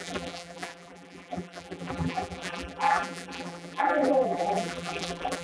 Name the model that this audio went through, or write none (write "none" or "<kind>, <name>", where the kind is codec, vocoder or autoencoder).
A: vocoder, BigVGAN v2